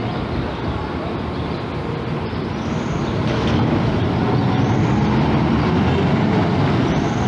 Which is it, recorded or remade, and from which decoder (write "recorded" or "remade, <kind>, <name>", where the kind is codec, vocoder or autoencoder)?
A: recorded